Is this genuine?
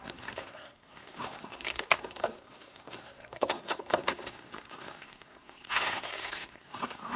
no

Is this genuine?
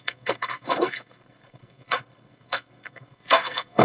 no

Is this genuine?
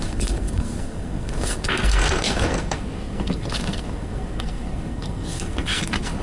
no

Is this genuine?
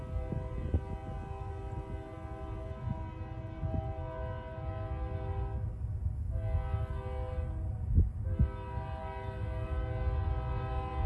yes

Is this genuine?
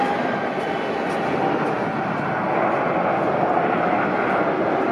yes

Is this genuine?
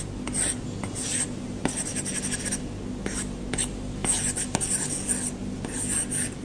yes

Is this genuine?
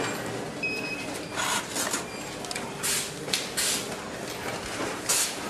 yes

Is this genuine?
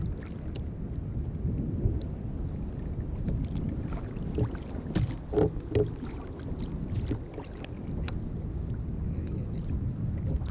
yes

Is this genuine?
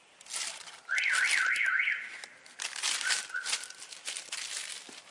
yes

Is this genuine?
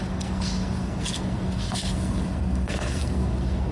no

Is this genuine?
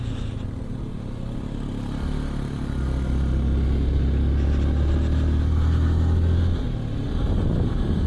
yes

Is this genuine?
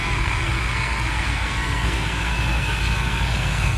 no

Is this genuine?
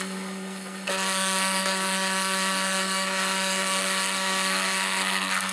no